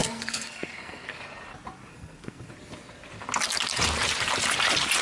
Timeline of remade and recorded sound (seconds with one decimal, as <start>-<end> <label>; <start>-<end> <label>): 0.0-1.2 remade; 1.2-1.9 recorded; 1.9-2.5 remade; 2.5-5.0 recorded